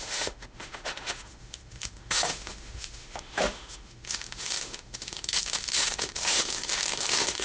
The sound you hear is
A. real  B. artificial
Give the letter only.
B